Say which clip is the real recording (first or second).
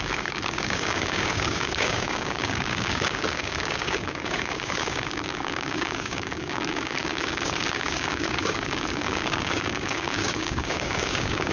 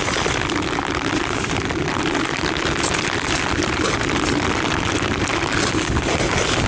second